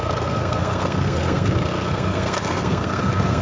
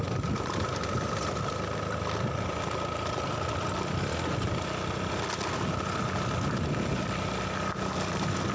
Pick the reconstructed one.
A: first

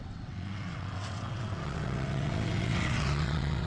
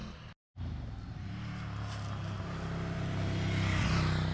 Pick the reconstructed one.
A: first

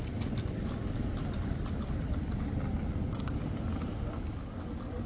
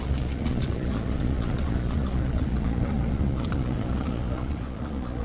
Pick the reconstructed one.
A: second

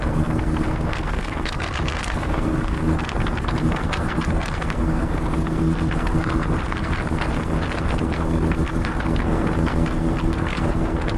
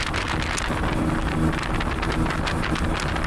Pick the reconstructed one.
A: first